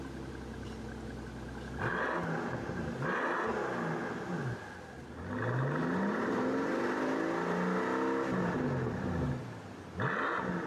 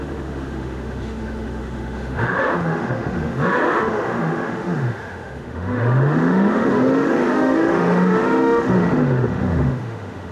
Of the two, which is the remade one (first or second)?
second